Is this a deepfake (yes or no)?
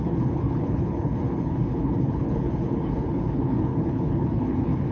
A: yes